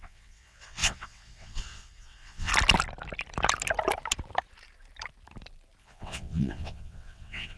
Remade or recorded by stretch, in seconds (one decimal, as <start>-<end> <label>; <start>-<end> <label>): 0.0-2.5 remade; 2.5-5.8 recorded; 5.8-7.6 remade